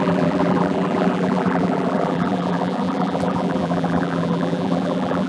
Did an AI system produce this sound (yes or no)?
yes